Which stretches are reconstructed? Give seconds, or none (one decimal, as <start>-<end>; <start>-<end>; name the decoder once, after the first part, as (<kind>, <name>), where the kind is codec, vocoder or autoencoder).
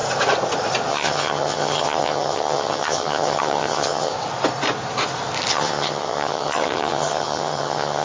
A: 0.9-4.1 (vocoder, HiFi-GAN); 5.5-8.0